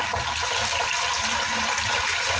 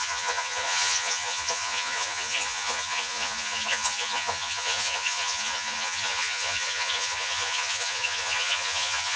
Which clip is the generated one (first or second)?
second